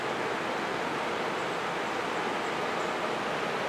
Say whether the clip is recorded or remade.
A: recorded